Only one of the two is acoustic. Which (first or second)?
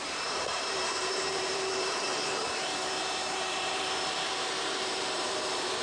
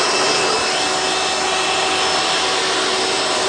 second